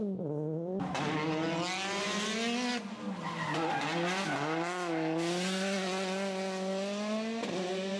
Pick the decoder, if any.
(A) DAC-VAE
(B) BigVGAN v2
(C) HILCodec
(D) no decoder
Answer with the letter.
D